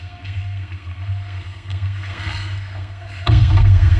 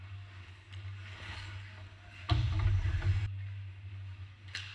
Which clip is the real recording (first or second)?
second